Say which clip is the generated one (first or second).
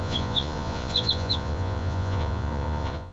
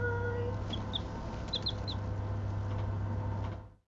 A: first